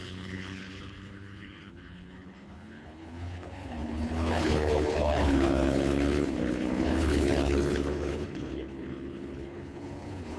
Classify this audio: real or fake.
fake